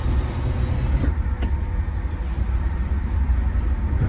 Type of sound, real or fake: real